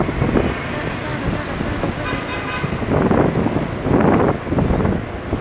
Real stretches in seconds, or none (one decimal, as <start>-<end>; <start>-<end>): 0.0-5.4